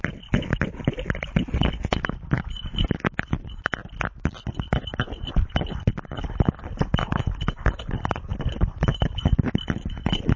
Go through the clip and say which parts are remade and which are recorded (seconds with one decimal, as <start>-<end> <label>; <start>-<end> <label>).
0.0-10.4 recorded